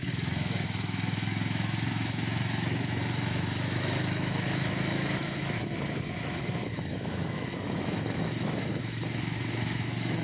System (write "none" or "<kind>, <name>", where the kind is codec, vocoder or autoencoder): autoencoder, DAC-VAE